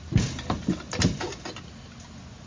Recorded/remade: recorded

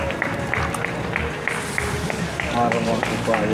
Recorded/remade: recorded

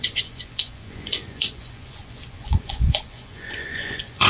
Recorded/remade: remade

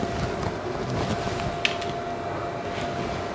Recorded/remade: recorded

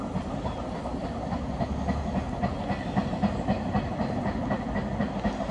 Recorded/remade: recorded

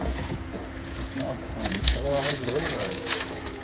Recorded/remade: remade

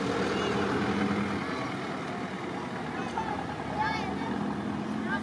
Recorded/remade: recorded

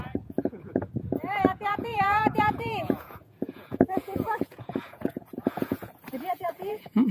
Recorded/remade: remade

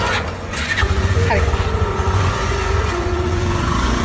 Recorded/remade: remade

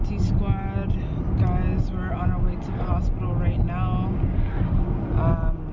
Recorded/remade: recorded